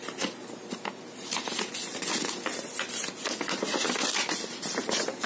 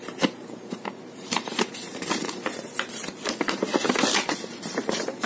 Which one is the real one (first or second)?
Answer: first